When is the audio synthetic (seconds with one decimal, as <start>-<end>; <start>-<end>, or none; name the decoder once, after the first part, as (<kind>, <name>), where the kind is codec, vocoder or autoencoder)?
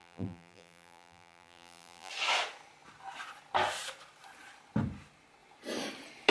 0.0-2.1 (vocoder, BigVGAN v2)